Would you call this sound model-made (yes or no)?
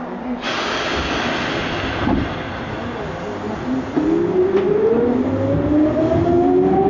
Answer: no